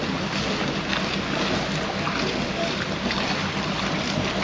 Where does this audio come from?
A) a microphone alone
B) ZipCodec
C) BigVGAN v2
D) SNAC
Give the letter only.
A